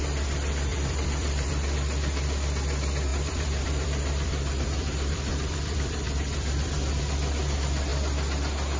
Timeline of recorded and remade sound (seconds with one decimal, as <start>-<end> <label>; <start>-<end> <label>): 0.0-0.7 recorded; 0.7-1.5 remade; 1.5-3.1 recorded; 3.1-7.0 remade; 7.0-8.8 recorded